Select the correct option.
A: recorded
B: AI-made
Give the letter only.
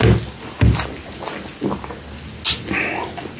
A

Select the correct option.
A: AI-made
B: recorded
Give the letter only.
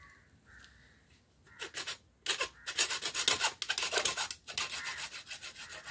B